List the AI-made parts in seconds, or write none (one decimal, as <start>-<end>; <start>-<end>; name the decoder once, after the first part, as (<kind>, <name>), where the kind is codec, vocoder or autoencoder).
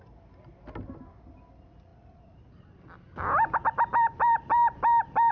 none